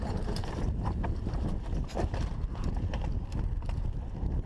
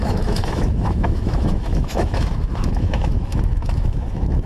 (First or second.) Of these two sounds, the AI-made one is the second